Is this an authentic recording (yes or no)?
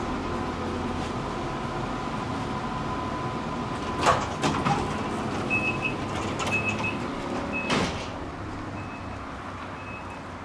yes